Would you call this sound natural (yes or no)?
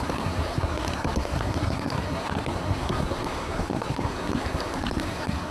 no